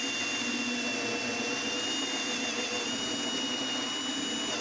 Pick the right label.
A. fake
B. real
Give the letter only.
B